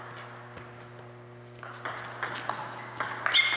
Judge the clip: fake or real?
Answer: real